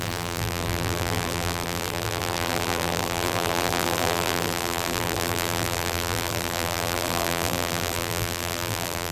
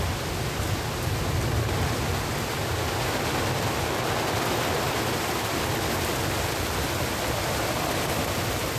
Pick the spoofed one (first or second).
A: first